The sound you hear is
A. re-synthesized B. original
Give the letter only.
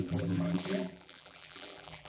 A